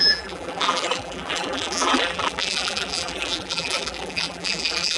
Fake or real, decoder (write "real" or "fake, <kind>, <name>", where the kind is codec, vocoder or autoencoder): fake, vocoder, BigVGAN v2